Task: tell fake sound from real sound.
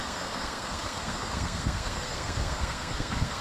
fake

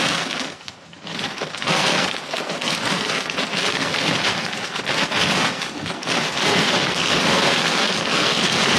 fake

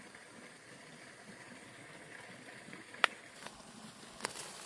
real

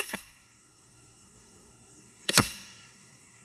fake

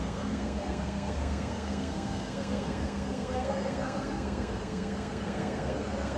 fake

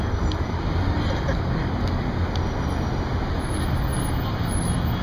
real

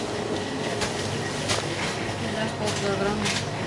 real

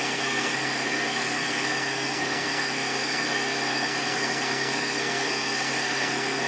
fake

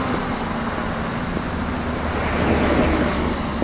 real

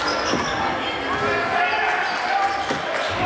real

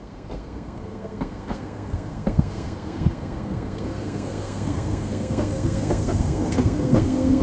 fake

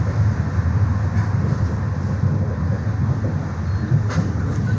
real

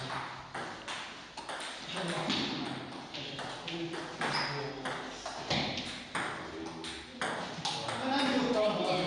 real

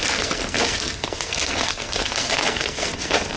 fake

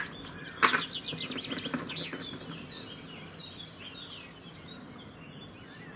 real